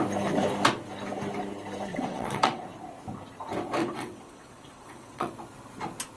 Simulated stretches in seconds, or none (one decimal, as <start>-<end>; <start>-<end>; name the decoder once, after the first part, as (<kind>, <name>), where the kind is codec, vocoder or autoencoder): 1.9-2.6 (vocoder, WaveNeXt); 3.8-5.3